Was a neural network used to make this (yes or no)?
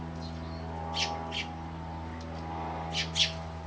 no